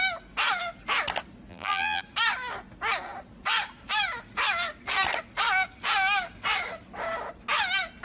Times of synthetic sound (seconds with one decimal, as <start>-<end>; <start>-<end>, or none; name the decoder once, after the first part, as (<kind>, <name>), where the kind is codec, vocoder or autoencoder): 1.5-2.0 (vocoder, BigVGAN v2)